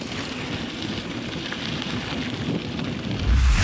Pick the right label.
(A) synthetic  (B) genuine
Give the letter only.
B